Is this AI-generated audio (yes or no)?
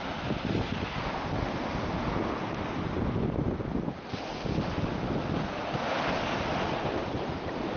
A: no